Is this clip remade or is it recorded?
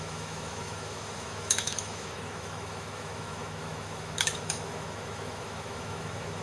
remade